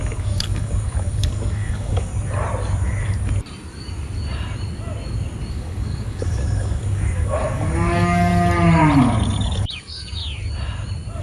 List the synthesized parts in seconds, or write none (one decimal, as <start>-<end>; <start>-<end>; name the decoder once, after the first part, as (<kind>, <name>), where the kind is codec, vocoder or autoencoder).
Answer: 0.0-2.1 (codec, DAC); 5.5-8.3; 9.0-10.2